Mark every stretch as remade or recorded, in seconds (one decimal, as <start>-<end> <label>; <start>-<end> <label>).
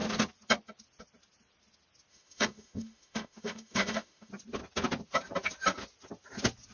0.0-2.1 recorded; 2.1-4.3 remade; 4.3-6.7 recorded